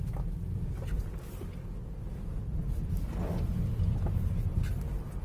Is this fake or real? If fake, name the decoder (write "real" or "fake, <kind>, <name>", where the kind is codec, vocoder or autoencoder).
real